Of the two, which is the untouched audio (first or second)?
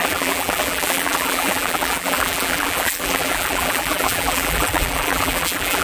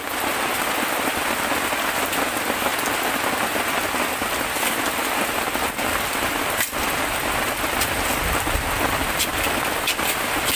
second